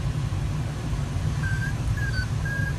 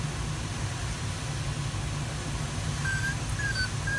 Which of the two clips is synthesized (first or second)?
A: first